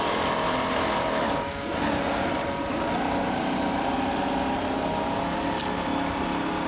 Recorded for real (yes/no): yes